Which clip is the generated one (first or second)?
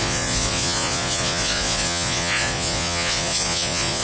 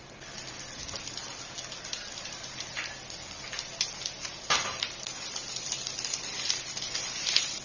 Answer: first